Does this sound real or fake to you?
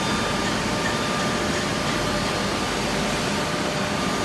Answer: real